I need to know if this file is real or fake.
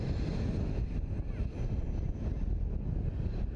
real